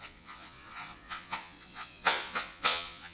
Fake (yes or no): yes